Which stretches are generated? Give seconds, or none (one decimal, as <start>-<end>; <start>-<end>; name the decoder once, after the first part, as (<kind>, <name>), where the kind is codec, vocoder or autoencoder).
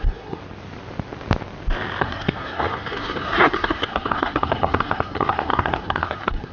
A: 0.0-0.4 (codec, SNAC); 2.0-6.5